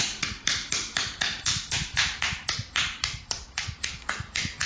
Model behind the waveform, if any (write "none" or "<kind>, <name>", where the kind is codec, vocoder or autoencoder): vocoder, BigVGAN v2